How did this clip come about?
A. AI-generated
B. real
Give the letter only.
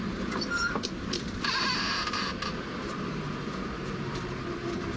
A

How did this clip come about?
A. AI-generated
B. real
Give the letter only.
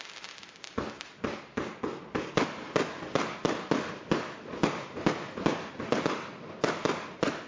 B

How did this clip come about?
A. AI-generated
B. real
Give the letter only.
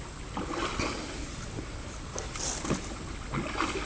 B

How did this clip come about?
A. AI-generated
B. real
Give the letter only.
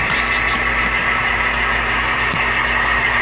B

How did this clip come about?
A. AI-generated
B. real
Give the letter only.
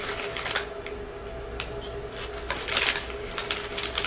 B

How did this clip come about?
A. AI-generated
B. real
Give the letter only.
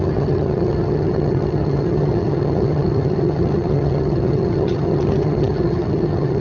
A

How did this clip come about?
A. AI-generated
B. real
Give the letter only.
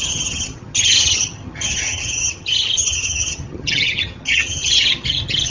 A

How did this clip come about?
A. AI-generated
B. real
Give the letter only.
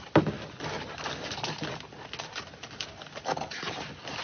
B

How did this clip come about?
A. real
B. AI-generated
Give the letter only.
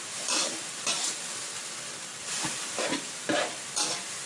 B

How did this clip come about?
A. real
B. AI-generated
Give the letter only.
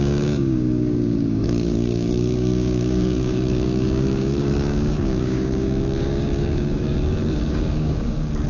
B